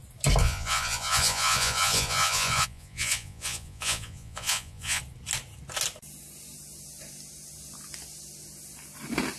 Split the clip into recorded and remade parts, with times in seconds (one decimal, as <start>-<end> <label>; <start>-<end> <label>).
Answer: 0.0-0.4 recorded; 0.4-5.0 remade; 5.0-9.4 recorded